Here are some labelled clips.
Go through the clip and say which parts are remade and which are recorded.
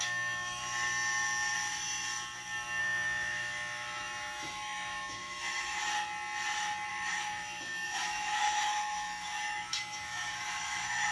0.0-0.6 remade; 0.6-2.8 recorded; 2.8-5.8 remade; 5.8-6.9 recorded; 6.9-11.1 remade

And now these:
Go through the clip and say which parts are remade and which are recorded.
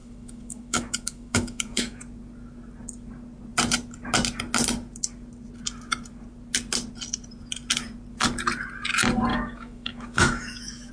0.0-2.0 remade; 2.0-9.3 recorded; 9.3-10.9 remade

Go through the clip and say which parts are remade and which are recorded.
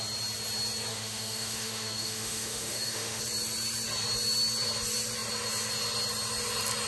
0.0-0.9 recorded; 0.9-3.2 remade; 3.2-6.9 recorded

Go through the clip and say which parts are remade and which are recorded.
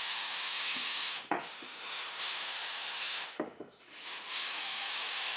0.0-5.4 remade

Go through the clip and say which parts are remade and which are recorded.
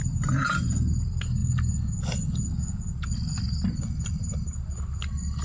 0.0-5.4 recorded